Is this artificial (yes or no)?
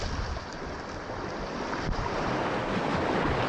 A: no